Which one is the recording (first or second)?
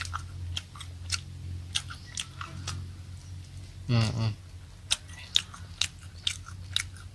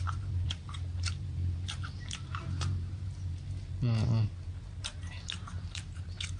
first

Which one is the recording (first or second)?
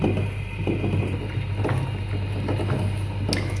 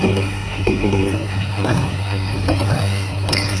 first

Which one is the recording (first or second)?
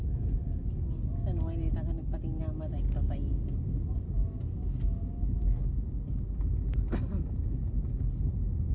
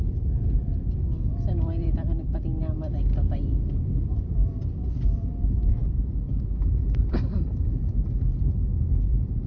first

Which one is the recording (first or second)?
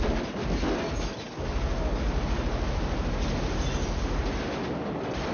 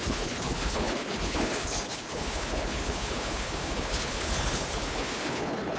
first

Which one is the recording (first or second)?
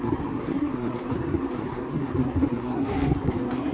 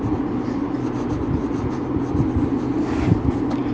second